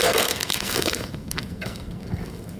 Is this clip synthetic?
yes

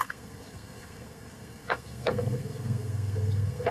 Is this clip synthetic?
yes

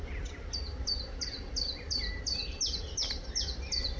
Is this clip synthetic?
no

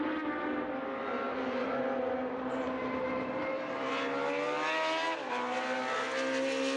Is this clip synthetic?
no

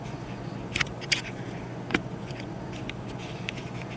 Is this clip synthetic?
yes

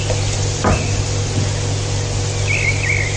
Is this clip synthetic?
no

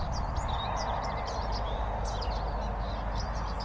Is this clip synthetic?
no